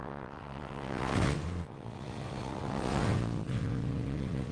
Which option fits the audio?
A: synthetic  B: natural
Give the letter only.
A